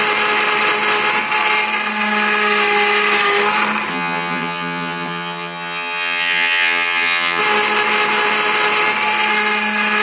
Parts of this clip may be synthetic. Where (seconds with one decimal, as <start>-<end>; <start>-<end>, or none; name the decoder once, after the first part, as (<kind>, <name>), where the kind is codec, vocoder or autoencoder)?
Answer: 3.9-7.4 (vocoder, HiFi-GAN)